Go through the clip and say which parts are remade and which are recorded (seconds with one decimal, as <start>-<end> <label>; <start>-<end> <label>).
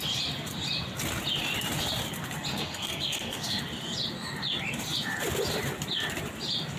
0.0-2.5 recorded; 2.5-3.6 remade; 3.6-6.8 recorded